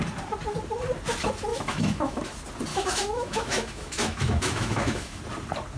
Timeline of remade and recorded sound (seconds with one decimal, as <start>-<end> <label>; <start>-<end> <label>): 0.0-1.5 recorded; 1.5-2.2 remade; 2.2-2.7 recorded; 2.7-5.2 remade; 5.2-5.8 recorded